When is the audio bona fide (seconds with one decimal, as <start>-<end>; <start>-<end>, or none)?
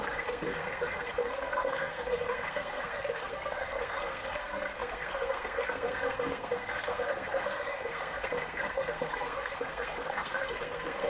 none